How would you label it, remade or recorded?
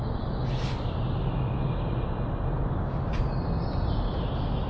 recorded